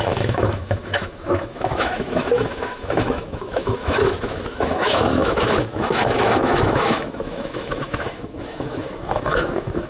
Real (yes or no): no